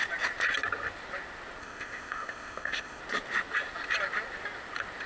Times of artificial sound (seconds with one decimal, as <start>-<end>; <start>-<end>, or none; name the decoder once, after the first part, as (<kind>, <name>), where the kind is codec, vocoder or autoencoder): 1.6-3.0 (codec, ZipCodec)